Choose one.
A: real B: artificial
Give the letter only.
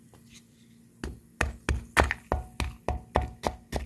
A